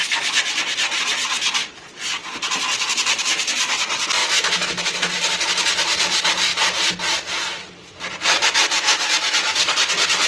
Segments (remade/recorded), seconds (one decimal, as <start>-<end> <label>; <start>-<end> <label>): 0.0-4.2 recorded; 4.2-5.1 remade; 5.1-10.3 recorded